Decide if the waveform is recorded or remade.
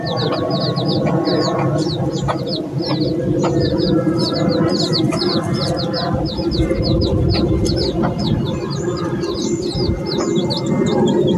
recorded